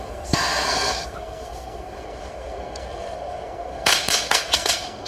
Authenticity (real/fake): fake